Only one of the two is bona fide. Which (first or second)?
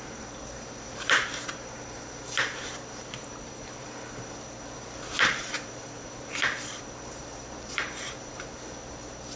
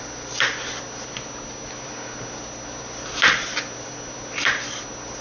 second